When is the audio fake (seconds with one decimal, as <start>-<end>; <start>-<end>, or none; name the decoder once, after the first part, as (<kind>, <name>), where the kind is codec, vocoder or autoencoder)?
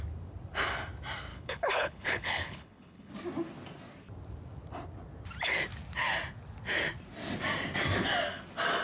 1.3-3.1 (codec, HILCodec)